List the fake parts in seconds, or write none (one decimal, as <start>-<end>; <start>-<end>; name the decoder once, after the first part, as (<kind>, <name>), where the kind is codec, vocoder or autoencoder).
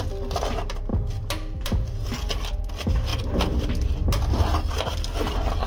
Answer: none